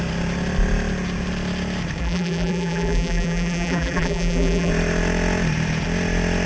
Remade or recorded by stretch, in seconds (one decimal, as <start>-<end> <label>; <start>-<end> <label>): 0.0-2.0 recorded; 2.0-4.7 remade; 4.7-6.5 recorded